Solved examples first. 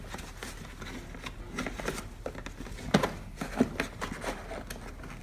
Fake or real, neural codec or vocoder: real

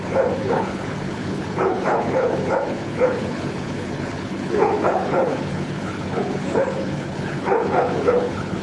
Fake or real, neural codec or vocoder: fake, codec, HILCodec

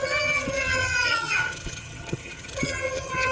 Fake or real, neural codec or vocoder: fake, vocoder, HiFi-GAN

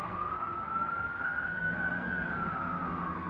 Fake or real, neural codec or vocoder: fake, codec, SNAC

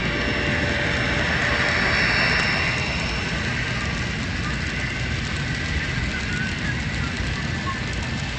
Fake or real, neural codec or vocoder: real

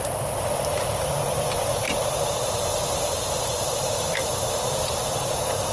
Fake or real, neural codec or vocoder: fake, vocoder, BigVGAN v2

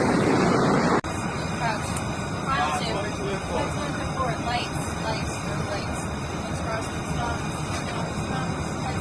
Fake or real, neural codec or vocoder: fake, vocoder, BigVGAN v2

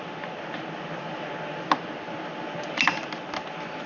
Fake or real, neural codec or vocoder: real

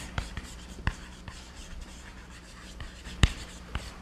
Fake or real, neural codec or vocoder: fake, vocoder, BigVGAN v2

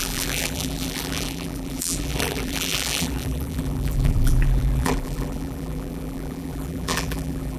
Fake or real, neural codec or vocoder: fake, vocoder, BigVGAN v2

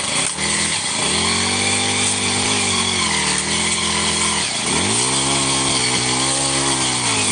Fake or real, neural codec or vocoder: real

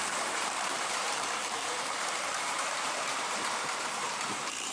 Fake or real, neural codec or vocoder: fake, vocoder, BigVGAN v2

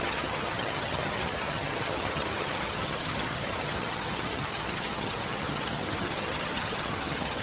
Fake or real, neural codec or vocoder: fake, vocoder, HiFi-GAN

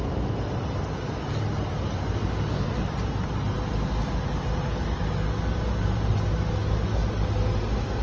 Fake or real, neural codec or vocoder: real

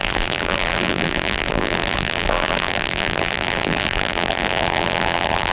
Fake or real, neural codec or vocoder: fake, vocoder, BigVGAN v2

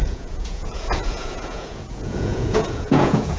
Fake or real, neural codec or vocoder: fake, vocoder, Vocos